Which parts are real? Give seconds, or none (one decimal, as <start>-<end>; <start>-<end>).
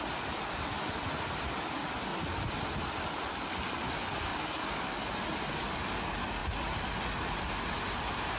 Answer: 0.0-8.4